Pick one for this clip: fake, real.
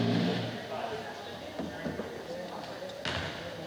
real